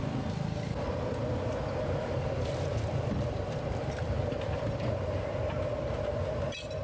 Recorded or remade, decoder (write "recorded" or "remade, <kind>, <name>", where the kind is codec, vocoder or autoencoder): remade, vocoder, BigVGAN v2